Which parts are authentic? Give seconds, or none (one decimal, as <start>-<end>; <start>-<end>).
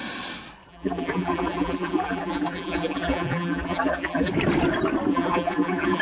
0.0-0.7; 4.3-5.1